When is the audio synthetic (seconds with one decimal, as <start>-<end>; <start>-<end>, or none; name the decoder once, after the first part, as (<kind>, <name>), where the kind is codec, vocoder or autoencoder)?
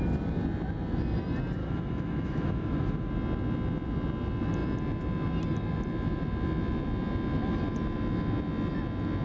1.6-3.1 (autoencoder, DAC-VAE)